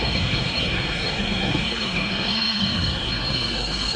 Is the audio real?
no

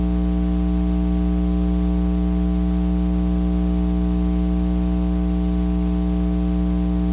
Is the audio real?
yes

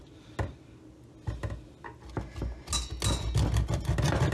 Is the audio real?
yes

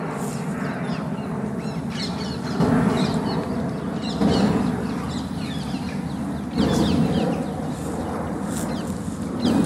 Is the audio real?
yes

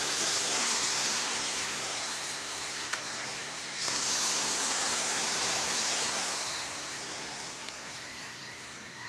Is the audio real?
no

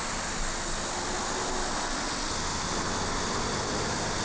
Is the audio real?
yes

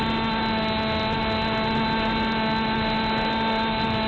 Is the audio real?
yes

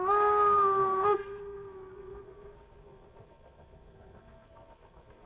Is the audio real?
no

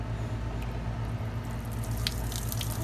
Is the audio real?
yes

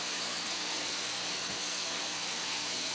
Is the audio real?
no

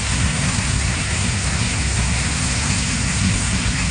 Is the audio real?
no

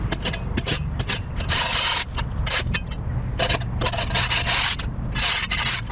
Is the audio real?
yes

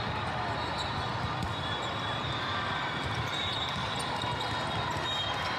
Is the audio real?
yes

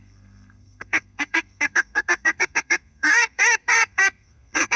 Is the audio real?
no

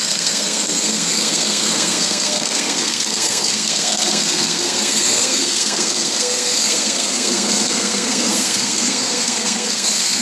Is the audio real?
no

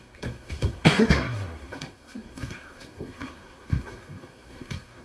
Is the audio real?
no